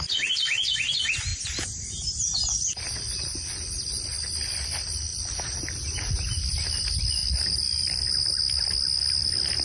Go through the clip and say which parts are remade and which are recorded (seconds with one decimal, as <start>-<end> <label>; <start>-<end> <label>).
0.0-1.3 recorded; 1.3-2.0 remade; 2.0-5.1 recorded; 5.1-5.7 remade; 5.7-7.2 recorded; 7.2-8.1 remade; 8.1-9.6 recorded